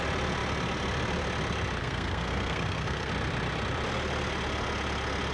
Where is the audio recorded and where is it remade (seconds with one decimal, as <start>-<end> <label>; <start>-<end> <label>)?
0.0-1.8 recorded; 1.8-3.1 remade; 3.1-5.3 recorded